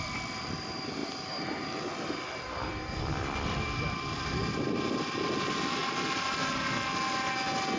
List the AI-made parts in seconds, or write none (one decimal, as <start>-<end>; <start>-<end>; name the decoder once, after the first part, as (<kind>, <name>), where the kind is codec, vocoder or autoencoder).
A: 0.0-5.8 (vocoder, BigVGAN v2)